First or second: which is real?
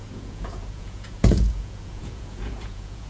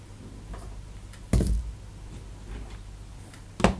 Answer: second